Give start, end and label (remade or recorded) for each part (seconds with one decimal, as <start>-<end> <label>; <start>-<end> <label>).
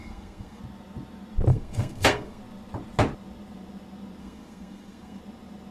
0.0-0.6 remade; 0.6-1.5 recorded; 1.5-2.4 remade; 2.4-4.2 recorded; 4.2-5.2 remade; 5.2-5.7 recorded